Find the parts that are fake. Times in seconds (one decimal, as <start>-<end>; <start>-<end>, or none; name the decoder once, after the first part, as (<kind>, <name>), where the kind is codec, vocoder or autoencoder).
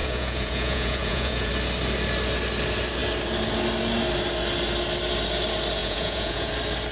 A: 0.0-1.5 (vocoder, Vocos); 5.8-6.5